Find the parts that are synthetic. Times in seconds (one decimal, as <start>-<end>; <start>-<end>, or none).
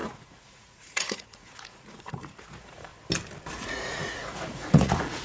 0.0-2.9; 3.5-5.2